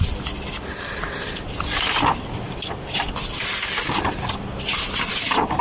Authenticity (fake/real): real